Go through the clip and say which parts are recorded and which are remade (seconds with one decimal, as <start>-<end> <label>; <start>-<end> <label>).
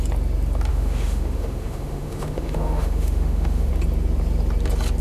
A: 0.0-0.7 recorded; 0.7-3.7 remade; 3.7-5.0 recorded